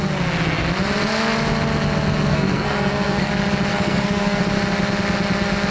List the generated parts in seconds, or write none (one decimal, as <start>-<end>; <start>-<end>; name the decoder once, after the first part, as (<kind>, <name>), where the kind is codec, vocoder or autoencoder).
2.3-3.3 (codec, SNAC); 3.7-4.4